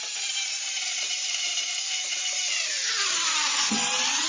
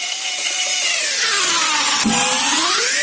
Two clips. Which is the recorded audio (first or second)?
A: second